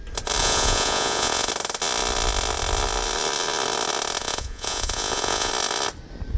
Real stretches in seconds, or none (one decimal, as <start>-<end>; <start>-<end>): 0.0-0.4; 1.5-4.2; 5.5-6.4